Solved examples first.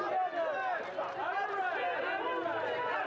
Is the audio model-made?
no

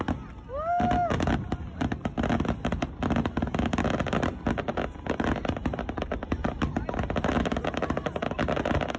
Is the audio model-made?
no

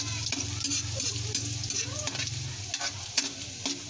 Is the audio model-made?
no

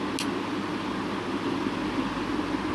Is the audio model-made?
no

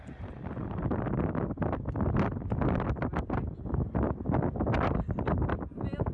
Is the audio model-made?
no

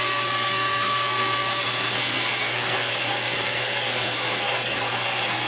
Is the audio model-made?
yes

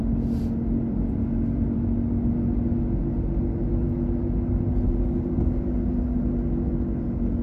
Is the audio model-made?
no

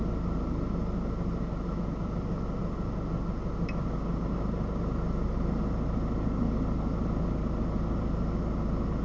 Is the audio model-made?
no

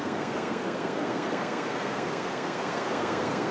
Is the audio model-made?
yes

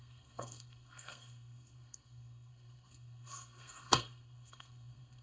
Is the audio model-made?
yes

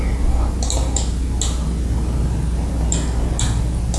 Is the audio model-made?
no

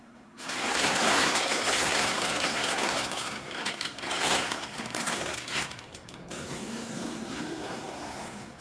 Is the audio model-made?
yes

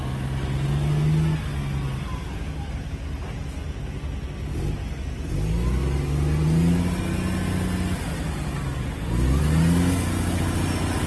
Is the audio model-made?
no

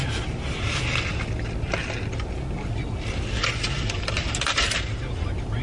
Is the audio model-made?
no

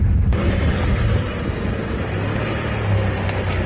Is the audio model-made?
no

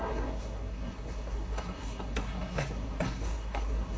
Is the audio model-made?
yes